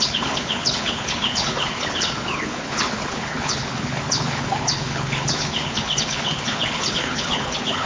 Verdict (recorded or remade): remade